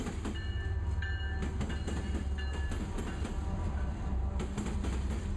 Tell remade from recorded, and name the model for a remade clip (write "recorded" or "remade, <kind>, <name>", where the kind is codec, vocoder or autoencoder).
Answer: recorded